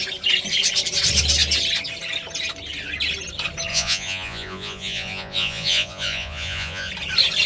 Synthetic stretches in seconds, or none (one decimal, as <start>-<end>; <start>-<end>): 3.7-6.9